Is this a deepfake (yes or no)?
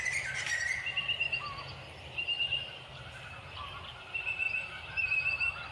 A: no